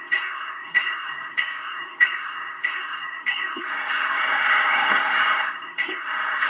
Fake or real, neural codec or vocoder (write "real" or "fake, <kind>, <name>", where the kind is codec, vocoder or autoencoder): fake, codec, SNAC